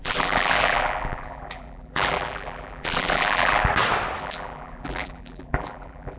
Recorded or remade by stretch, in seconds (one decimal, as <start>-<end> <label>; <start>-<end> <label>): 0.0-3.7 remade; 3.7-4.2 recorded; 4.2-6.2 remade